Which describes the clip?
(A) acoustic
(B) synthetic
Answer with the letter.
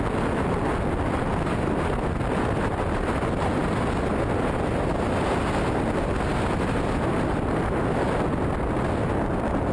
A